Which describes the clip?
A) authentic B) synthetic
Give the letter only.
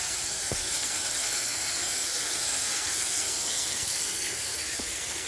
B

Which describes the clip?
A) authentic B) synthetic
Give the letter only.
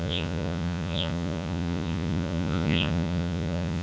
B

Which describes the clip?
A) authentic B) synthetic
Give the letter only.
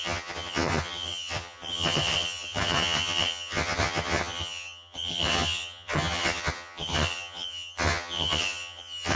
B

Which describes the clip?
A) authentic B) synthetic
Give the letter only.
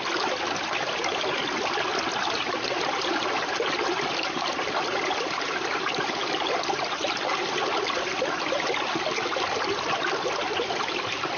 A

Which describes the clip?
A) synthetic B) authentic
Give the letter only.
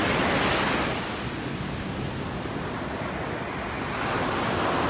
B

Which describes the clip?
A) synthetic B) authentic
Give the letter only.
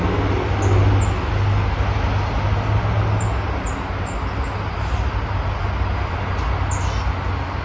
B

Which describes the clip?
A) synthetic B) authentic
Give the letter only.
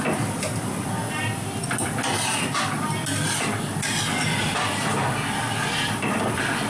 B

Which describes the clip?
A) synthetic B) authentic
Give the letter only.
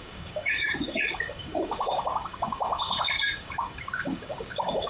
A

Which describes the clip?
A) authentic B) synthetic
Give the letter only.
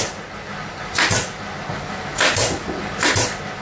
A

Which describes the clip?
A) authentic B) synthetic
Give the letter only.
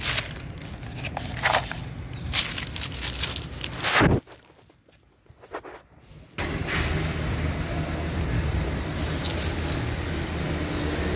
A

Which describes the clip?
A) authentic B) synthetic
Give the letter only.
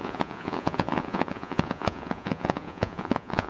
B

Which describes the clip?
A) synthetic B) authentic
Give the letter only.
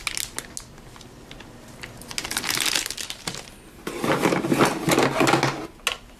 B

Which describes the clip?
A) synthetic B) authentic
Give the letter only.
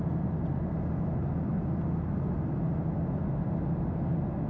B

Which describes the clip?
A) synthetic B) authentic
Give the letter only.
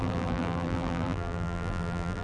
A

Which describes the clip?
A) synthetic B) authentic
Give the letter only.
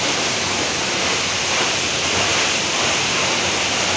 A